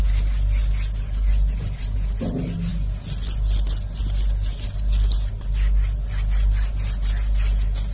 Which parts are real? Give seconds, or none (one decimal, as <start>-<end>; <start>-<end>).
0.0-7.9